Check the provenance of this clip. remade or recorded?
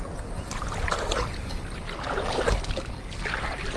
recorded